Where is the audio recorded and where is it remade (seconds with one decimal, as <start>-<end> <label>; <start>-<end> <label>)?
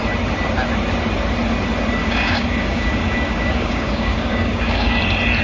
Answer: 0.0-2.0 recorded; 2.0-5.0 remade; 5.0-5.4 recorded